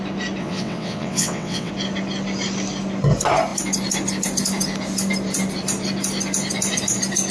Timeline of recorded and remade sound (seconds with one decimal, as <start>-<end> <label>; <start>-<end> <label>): 0.0-0.4 recorded; 0.4-1.7 remade; 1.7-7.3 recorded